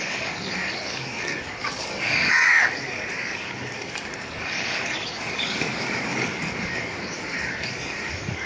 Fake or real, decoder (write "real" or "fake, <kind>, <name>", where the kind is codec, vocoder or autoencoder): fake, codec, DAC